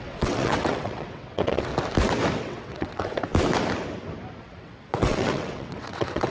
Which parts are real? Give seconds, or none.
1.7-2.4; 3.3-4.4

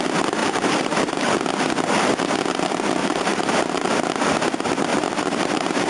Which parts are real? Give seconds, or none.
0.0-0.4; 1.1-3.0; 3.9-4.9

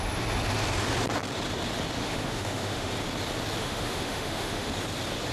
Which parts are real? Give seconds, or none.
0.0-2.0; 2.9-3.6; 4.7-5.3

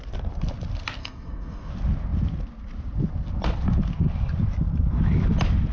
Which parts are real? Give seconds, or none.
0.0-1.0; 1.7-5.7

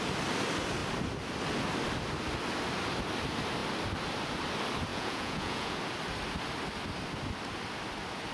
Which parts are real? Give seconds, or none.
0.0-4.9; 5.8-8.3

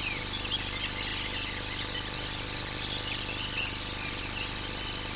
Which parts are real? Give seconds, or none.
0.0-5.2